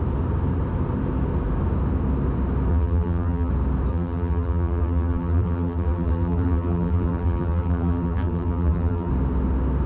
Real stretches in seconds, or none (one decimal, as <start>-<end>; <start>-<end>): 0.0-2.7; 3.5-3.9; 9.1-9.9